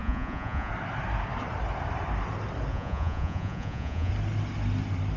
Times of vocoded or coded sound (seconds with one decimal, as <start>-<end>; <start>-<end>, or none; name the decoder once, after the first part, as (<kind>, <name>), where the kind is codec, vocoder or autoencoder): 0.0-0.7 (vocoder, Vocos); 2.7-4.1